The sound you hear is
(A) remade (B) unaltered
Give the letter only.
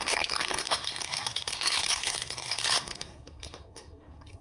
A